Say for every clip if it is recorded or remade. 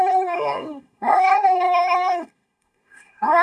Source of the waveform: remade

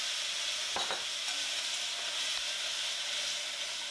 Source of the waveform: recorded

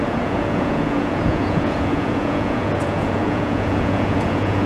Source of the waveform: remade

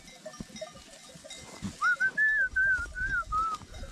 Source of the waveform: recorded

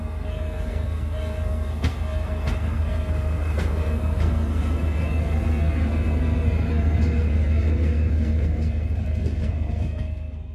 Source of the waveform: remade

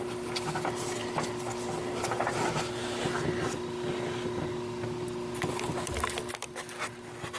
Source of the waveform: recorded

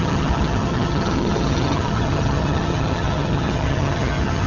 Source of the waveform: remade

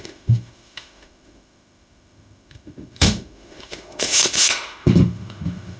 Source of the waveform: remade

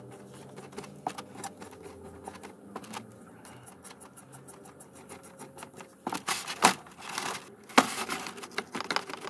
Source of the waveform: recorded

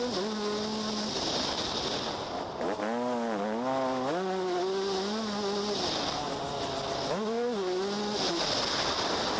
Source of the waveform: recorded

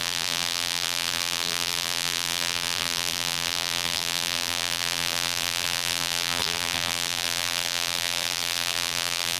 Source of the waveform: remade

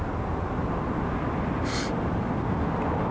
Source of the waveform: recorded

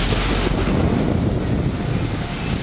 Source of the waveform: recorded